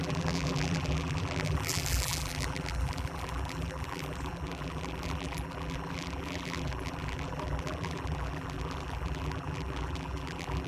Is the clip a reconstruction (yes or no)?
yes